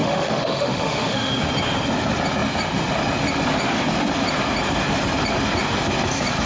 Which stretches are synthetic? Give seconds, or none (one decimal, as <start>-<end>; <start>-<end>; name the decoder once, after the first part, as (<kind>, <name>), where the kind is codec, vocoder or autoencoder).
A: 0.0-1.3 (autoencoder, DAC-VAE)